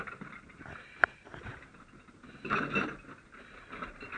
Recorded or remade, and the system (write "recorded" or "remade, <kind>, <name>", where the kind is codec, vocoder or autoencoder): recorded